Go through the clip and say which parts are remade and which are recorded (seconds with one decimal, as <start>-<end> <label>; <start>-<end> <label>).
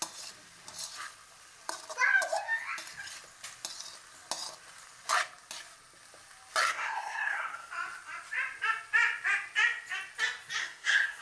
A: 0.0-6.7 recorded; 6.7-7.7 remade; 7.7-10.6 recorded; 10.6-11.2 remade